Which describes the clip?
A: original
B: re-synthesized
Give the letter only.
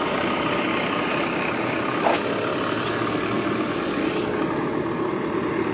A